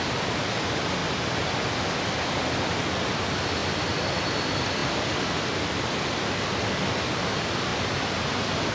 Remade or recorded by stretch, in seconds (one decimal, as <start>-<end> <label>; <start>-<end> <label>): 0.0-3.6 recorded; 3.6-4.1 remade; 4.1-8.7 recorded